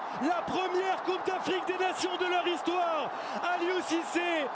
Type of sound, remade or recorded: recorded